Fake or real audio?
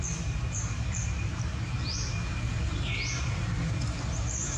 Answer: fake